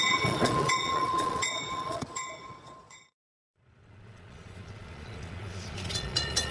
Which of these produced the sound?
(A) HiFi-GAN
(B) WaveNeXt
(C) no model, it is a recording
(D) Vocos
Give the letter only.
D